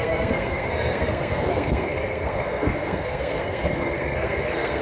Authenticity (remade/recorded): remade